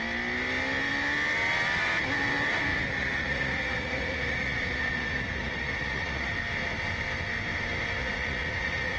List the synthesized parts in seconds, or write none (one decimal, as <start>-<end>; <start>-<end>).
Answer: 2.7-6.3; 8.0-9.0